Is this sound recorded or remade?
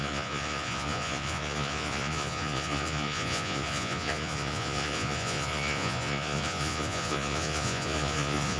remade